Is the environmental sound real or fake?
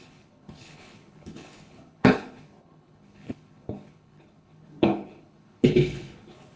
fake